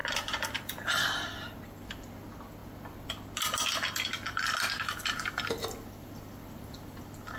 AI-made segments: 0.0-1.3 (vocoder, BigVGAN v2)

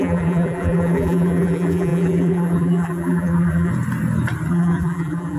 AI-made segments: 0.0-3.7 (vocoder, BigVGAN v2); 4.5-5.4

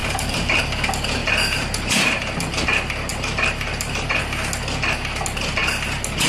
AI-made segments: 0.0-0.6 (vocoder, BigVGAN v2); 1.2-2.2; 3.1-4.2